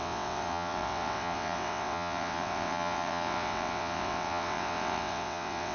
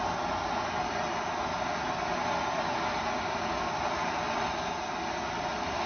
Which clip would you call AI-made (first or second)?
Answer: first